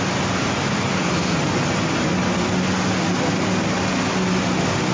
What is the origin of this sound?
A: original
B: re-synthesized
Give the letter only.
A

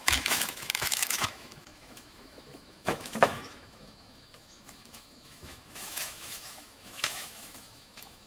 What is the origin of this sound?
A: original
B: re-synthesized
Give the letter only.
B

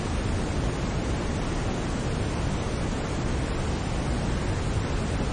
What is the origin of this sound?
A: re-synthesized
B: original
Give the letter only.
B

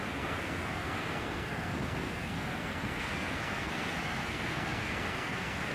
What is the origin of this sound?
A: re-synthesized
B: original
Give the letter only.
A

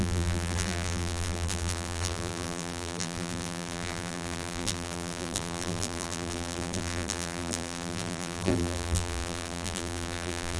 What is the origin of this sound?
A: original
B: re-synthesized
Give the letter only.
B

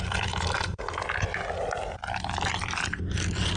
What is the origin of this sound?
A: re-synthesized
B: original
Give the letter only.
B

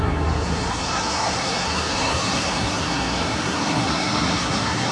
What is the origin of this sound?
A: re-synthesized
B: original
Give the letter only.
A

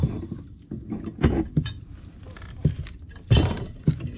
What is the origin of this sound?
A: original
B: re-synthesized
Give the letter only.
A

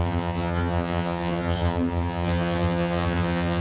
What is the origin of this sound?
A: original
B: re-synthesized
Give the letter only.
B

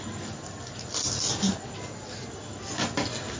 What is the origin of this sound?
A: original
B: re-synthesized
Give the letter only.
A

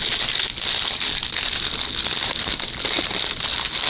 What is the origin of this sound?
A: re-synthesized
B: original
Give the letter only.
B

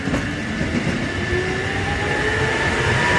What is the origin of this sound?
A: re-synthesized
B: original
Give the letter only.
B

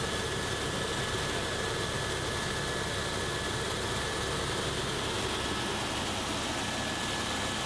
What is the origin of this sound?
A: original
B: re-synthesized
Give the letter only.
A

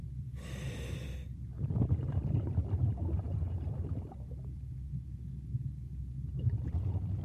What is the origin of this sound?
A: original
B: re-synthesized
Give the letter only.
A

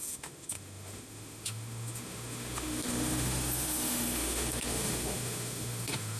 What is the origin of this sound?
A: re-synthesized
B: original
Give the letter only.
A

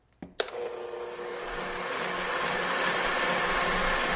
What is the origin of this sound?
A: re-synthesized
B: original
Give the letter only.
B